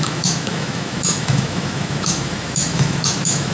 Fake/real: fake